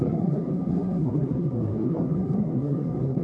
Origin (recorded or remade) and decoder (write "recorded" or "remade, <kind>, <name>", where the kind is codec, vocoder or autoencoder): remade, codec, SNAC